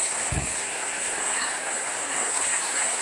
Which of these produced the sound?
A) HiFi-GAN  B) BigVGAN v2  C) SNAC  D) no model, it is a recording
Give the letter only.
C